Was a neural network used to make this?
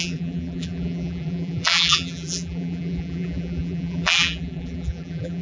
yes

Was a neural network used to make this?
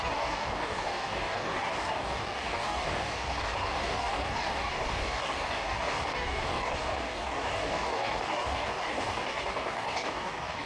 yes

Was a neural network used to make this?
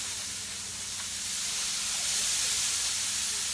no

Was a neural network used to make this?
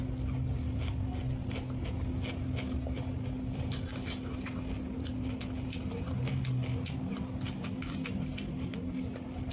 no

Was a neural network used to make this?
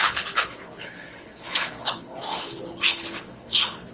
yes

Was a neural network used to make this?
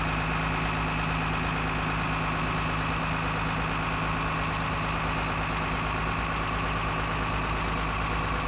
no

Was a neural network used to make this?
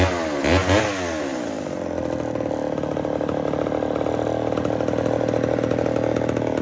no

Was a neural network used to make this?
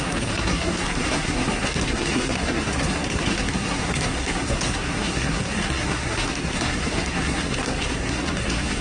yes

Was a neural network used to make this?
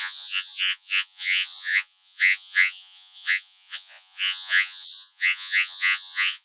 yes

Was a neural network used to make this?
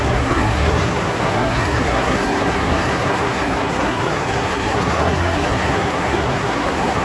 yes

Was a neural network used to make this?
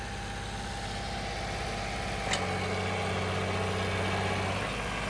no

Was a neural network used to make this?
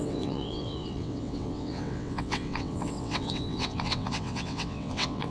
yes